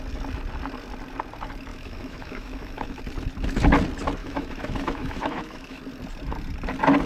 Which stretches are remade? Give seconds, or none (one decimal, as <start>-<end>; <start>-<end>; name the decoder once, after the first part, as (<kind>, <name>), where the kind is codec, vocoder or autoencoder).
1.7-3.0 (autoencoder, DAC-VAE); 4.2-5.8